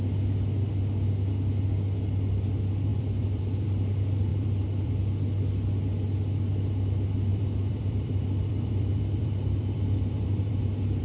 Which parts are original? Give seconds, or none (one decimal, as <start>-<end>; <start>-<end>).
0.0-2.9; 3.4-4.3; 4.9-7.3